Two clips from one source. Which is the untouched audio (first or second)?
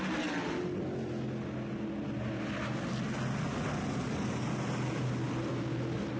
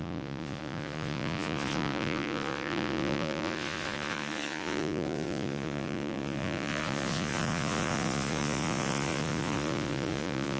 first